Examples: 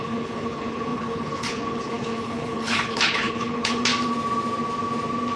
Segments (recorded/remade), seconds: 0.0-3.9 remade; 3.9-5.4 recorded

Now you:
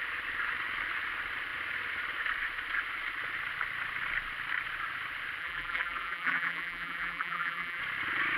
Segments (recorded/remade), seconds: 0.0-5.4 recorded; 5.4-7.8 remade; 7.8-8.4 recorded

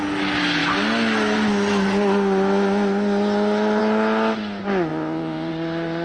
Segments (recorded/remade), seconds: 0.0-4.9 recorded; 4.9-5.5 remade; 5.5-6.0 recorded

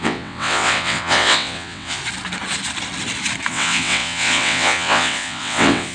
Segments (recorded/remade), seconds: 0.0-2.0 remade; 2.0-3.5 recorded; 3.5-5.9 remade

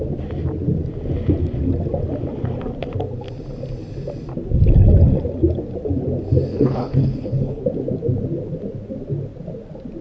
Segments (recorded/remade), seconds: 0.0-6.5 recorded; 6.5-7.6 remade; 7.6-10.0 recorded

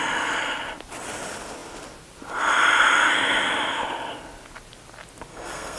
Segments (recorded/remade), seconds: 0.0-5.3 recorded; 5.3-5.8 remade